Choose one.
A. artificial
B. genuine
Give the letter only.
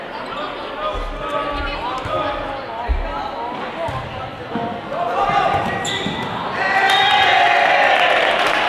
B